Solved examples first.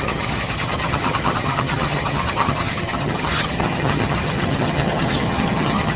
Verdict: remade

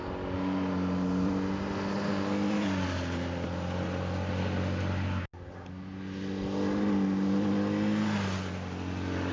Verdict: recorded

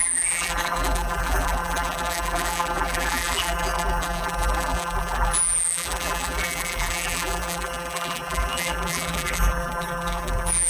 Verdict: remade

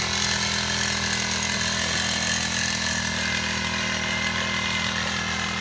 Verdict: recorded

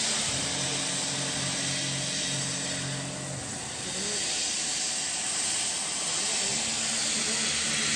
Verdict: recorded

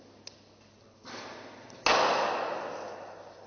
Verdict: recorded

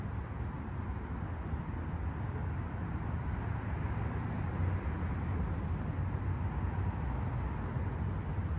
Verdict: recorded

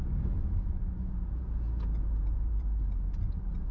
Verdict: remade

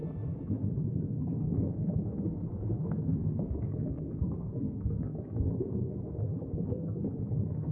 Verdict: remade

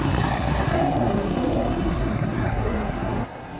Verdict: remade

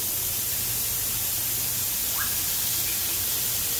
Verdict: recorded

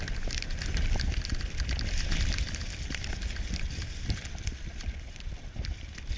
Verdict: recorded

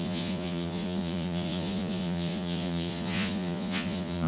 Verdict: remade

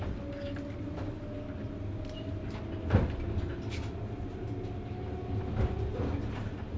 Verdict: recorded